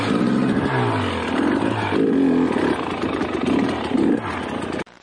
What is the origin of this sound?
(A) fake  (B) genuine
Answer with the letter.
B